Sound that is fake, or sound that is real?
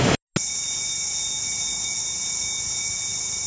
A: real